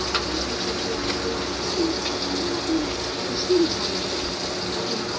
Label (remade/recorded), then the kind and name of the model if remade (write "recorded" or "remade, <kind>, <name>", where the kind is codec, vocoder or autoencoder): recorded